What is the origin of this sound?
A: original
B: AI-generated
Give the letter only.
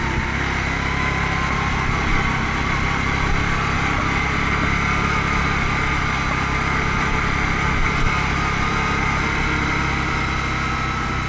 A